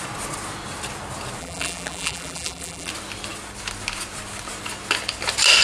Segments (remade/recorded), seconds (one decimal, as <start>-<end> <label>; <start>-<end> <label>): 0.0-1.4 recorded; 1.4-2.9 remade; 2.9-5.6 recorded